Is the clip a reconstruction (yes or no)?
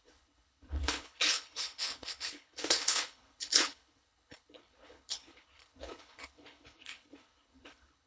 yes